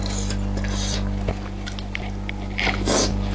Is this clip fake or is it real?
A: real